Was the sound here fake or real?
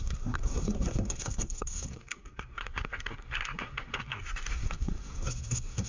fake